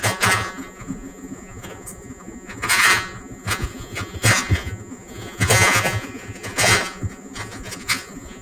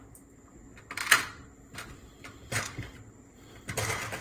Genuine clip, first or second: second